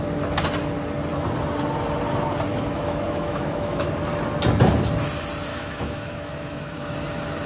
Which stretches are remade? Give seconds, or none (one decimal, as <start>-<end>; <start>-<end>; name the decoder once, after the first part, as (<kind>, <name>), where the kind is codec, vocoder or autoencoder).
2.5-3.9 (autoencoder, DAC-VAE); 5.5-6.9